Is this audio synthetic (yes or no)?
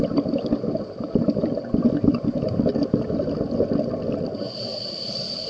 no